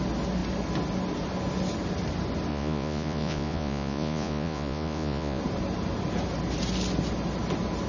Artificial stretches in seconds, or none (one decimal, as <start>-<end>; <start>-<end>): 2.5-5.4